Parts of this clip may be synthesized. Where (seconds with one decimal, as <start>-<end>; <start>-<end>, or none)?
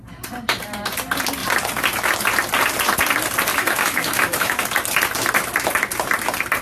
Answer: 3.5-4.6